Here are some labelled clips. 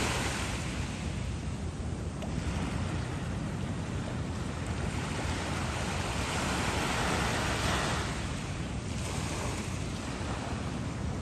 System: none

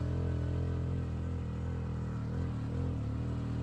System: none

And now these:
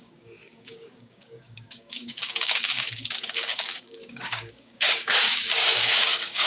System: codec, DAC